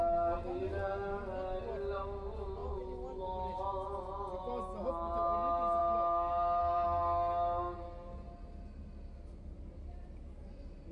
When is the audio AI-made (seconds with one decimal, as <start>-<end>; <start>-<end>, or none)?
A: none